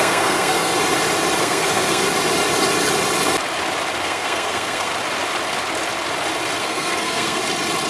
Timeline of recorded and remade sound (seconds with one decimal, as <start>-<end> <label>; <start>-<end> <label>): 0.0-0.7 remade; 0.7-1.4 recorded; 1.4-2.0 remade; 2.0-4.0 recorded; 4.0-4.9 remade; 4.9-6.6 recorded; 6.6-7.4 remade; 7.4-7.9 recorded